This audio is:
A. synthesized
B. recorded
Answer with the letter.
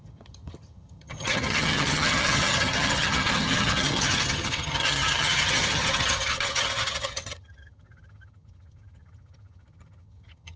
A